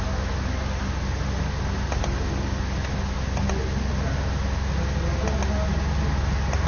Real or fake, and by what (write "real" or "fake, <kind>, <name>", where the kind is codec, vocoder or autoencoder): real